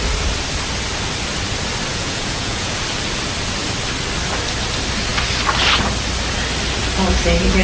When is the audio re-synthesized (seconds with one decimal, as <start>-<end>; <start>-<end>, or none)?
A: 1.9-2.7